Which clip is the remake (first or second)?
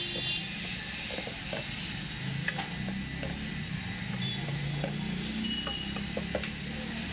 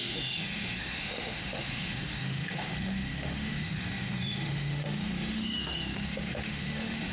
second